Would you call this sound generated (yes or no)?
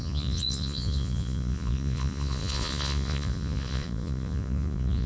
yes